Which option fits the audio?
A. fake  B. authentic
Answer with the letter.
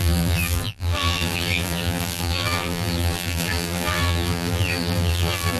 A